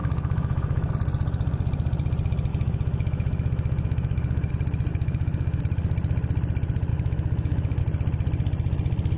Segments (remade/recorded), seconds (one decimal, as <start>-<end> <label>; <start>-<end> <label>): 0.0-0.9 remade; 0.9-2.5 recorded; 2.5-4.5 remade; 4.5-4.9 recorded; 4.9-5.6 remade; 5.6-6.9 recorded; 6.9-7.8 remade; 7.8-9.2 recorded